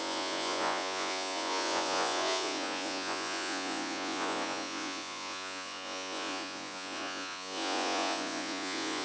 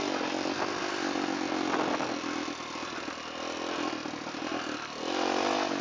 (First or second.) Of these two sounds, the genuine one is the second